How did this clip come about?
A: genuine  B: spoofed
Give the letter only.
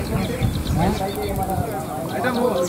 A